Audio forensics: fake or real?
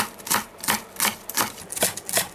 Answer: real